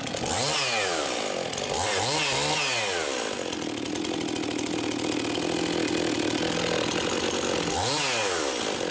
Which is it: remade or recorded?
recorded